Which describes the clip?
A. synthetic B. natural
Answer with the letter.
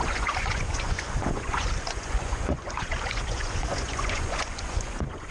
A